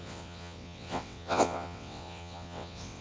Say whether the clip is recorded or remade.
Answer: remade